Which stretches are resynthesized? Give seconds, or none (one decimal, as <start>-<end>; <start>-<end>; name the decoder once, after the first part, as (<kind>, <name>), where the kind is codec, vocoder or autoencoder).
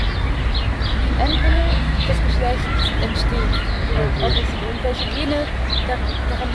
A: 1.5-2.2 (codec, SNAC)